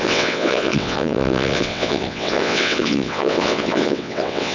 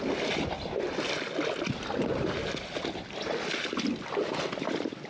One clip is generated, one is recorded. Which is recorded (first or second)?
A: second